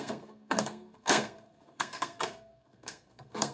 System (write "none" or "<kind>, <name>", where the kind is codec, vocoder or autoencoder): codec, SNAC